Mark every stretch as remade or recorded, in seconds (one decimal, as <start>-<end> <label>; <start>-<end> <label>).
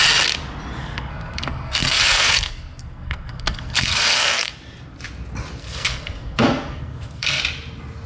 0.0-0.8 recorded; 0.8-4.5 remade; 4.5-5.6 recorded; 5.6-7.4 remade; 7.4-8.1 recorded